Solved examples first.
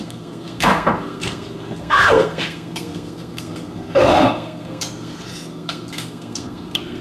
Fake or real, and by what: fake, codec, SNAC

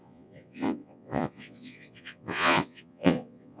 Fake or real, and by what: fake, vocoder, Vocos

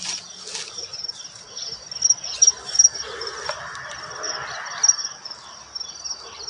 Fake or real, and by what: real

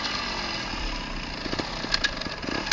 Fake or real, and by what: real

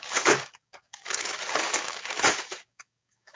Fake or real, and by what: fake, codec, DAC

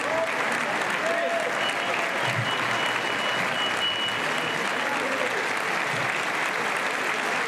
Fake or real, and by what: real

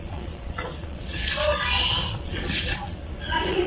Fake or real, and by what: fake, vocoder, Vocos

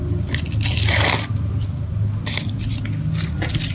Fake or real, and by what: real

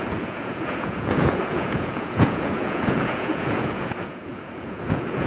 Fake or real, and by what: fake, vocoder, Vocos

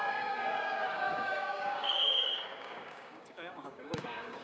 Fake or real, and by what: fake, codec, DAC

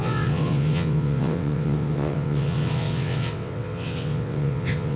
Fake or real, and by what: fake, vocoder, WaveNeXt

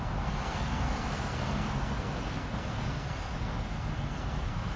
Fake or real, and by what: fake, codec, SNAC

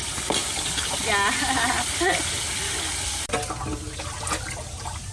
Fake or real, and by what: real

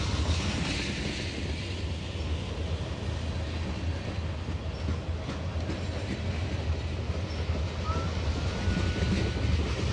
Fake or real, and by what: real